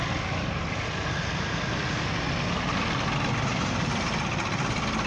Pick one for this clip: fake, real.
real